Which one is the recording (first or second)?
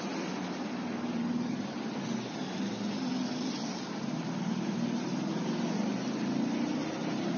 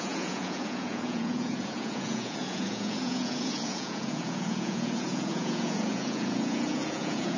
first